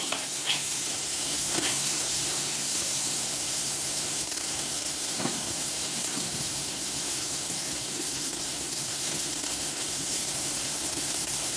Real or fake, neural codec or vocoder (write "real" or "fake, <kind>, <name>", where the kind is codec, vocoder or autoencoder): fake, codec, SNAC